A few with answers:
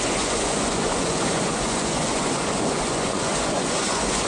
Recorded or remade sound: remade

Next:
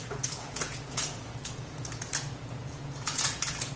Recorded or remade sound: remade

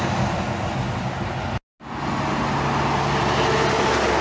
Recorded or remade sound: recorded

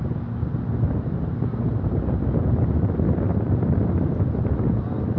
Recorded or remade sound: recorded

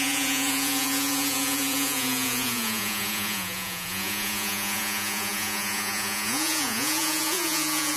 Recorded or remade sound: remade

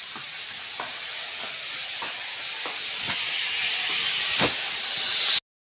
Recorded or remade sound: recorded